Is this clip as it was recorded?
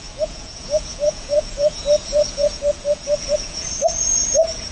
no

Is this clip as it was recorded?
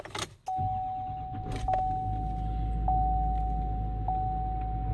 yes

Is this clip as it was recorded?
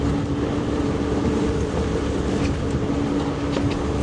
yes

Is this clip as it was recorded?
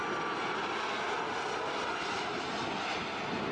yes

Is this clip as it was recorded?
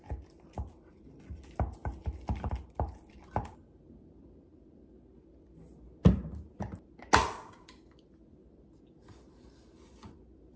yes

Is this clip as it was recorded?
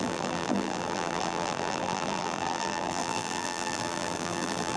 no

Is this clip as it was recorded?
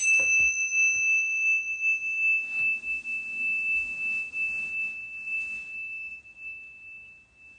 yes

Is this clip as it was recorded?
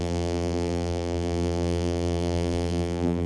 no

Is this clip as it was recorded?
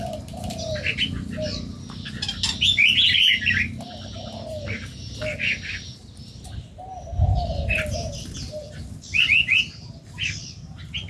yes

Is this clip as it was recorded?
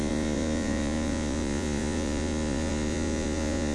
no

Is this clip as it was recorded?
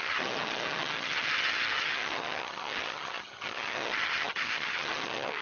no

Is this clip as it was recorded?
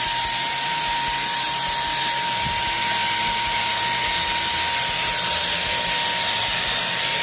yes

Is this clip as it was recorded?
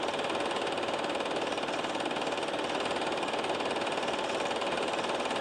yes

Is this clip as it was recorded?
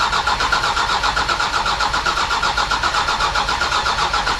no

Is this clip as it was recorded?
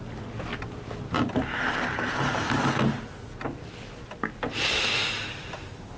yes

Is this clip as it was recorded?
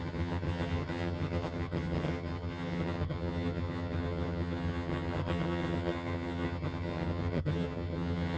no